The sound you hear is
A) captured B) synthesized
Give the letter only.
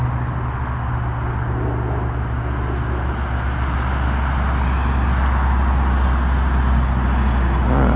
A